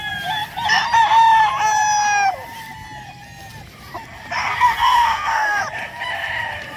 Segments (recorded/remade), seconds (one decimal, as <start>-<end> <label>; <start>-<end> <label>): 0.0-4.4 recorded; 4.4-5.6 remade; 5.6-6.8 recorded